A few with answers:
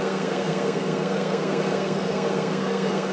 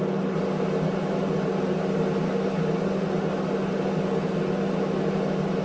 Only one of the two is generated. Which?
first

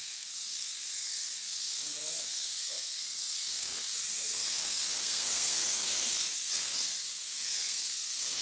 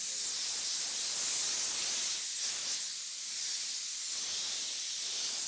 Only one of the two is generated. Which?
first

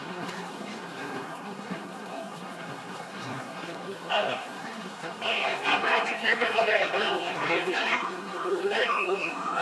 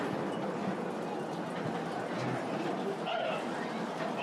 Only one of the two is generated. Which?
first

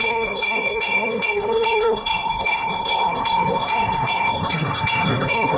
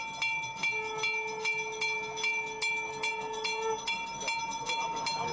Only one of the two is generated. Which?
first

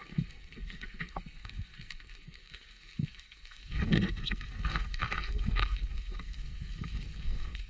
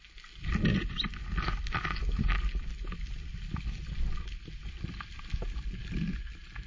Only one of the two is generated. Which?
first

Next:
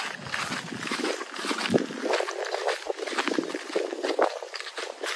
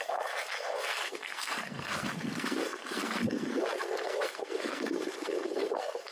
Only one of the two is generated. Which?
second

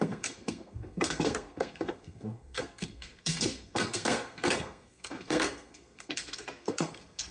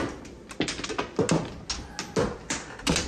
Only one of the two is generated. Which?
first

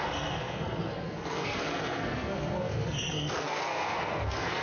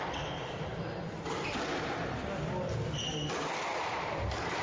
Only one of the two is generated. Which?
first